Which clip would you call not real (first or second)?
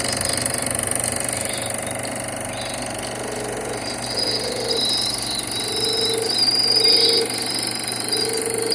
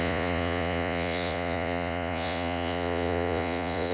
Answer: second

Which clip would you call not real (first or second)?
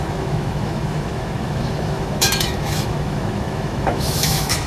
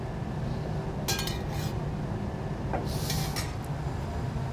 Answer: first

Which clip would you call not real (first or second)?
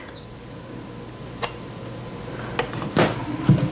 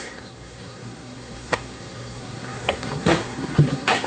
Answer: second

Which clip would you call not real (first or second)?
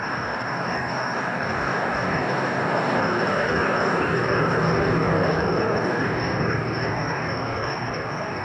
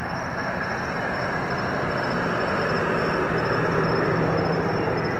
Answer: first